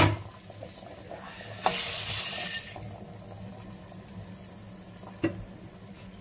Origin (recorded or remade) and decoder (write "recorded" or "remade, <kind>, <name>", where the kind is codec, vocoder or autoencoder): recorded